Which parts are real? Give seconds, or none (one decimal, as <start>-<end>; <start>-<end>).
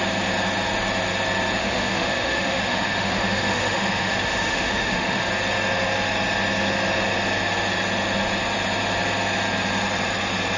0.0-1.6; 5.3-10.6